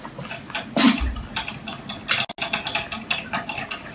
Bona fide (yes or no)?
yes